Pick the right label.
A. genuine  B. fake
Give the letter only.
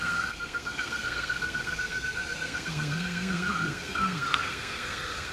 B